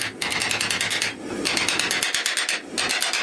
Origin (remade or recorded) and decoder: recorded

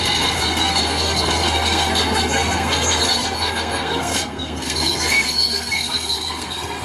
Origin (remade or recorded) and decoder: remade, codec, SNAC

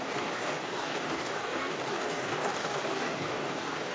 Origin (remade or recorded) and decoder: remade, codec, DAC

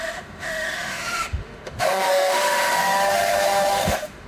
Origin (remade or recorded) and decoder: remade, autoencoder, DAC-VAE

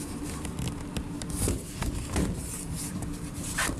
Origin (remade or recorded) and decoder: recorded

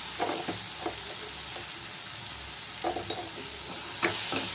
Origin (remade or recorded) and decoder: recorded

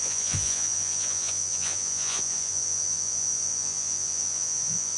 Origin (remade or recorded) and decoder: remade, vocoder, Vocos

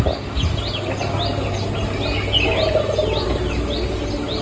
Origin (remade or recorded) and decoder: recorded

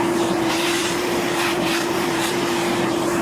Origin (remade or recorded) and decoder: remade, vocoder, BigVGAN v2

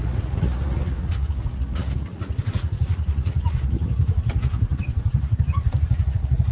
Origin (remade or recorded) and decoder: remade, vocoder, Vocos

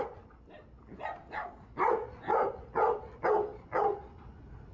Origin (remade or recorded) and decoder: recorded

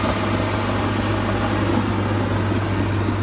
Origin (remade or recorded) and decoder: recorded